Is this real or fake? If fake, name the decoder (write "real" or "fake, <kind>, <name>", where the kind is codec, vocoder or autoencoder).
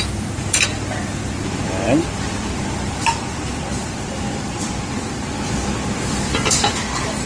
fake, vocoder, BigVGAN v2